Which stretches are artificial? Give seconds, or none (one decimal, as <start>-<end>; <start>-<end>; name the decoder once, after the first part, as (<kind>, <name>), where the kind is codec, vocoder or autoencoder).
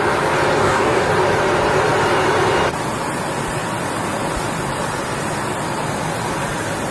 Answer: 0.6-1.1 (codec, DAC)